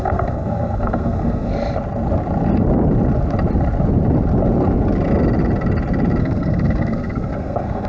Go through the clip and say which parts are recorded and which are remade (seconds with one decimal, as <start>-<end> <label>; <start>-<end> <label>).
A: 0.0-1.5 remade; 1.5-6.2 recorded; 6.2-7.9 remade